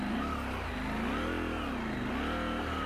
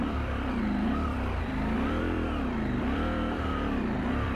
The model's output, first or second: second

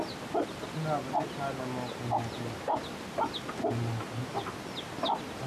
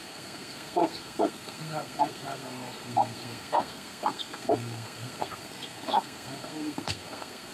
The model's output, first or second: second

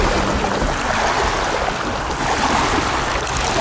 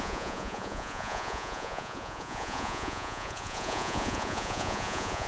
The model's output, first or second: second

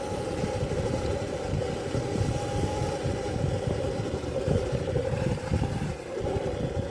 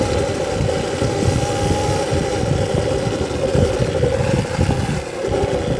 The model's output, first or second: first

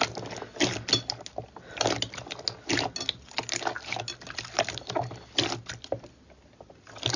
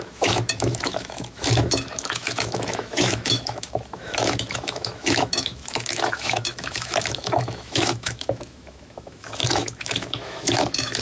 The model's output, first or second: second